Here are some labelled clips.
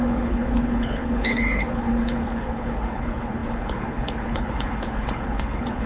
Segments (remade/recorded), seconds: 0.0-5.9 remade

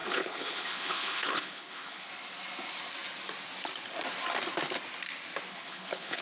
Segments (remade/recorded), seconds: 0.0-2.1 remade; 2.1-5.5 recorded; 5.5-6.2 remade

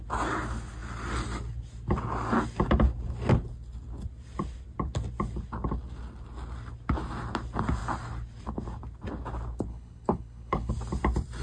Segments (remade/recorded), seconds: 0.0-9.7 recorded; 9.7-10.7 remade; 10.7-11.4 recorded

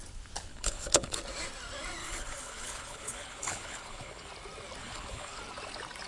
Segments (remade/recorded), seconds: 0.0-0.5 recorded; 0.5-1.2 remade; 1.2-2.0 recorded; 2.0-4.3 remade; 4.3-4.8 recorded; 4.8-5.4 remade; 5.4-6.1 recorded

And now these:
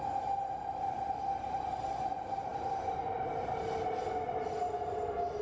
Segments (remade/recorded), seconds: 0.0-5.4 recorded

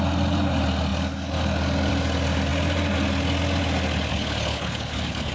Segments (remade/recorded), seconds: 0.0-4.1 recorded; 4.1-5.3 remade

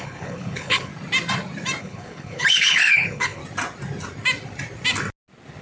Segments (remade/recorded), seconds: 0.0-0.9 remade; 0.9-1.8 recorded; 1.8-3.4 remade; 3.4-5.6 recorded

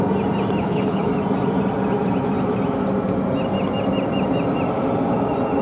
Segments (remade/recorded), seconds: 0.0-0.6 recorded; 0.6-1.1 remade; 1.1-5.6 recorded